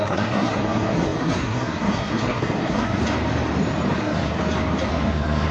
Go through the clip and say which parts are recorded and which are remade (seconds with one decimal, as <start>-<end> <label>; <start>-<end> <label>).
0.0-3.0 remade; 3.0-4.0 recorded; 4.0-4.4 remade; 4.4-4.9 recorded; 4.9-5.5 remade